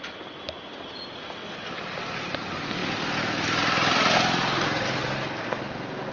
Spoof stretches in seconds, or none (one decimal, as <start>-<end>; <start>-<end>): none